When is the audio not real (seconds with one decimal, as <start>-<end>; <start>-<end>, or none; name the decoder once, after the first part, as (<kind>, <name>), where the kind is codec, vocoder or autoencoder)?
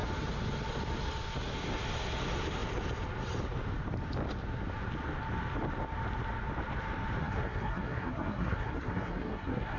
7.2-9.8 (codec, SNAC)